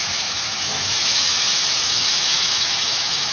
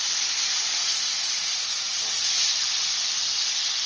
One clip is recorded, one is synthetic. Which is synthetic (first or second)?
first